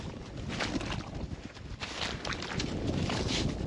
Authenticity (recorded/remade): recorded